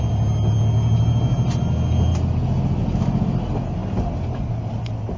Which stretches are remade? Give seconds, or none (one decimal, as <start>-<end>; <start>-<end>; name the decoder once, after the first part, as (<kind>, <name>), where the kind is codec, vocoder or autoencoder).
none